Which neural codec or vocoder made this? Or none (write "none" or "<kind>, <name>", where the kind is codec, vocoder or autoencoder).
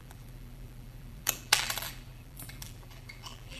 vocoder, BigVGAN v2